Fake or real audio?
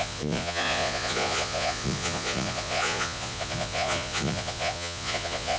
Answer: fake